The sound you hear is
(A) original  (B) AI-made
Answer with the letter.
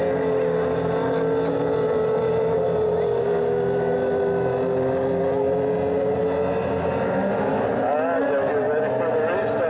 A